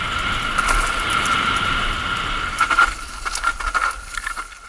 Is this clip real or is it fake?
real